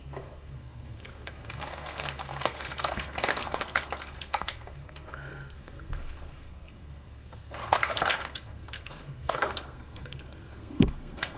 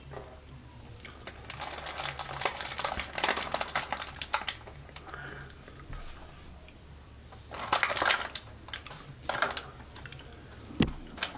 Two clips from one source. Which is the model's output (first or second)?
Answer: first